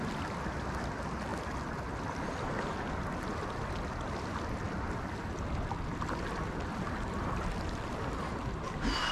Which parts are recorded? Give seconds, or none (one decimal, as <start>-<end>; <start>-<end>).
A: 0.0-9.1